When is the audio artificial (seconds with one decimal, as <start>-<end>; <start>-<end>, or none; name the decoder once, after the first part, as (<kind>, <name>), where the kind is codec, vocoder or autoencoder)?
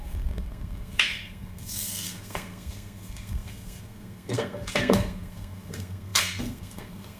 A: 0.0-7.2 (codec, SNAC)